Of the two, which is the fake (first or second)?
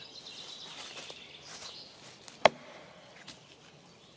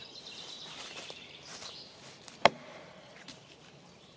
second